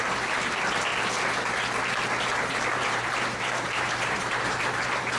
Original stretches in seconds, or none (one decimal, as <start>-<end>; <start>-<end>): 0.9-2.2